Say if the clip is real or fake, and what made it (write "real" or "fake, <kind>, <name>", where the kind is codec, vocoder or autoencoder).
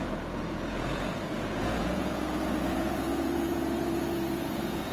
fake, vocoder, Vocos